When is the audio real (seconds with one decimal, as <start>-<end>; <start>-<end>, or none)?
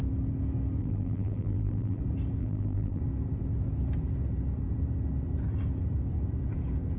0.0-0.8; 2.0-2.4; 3.0-7.0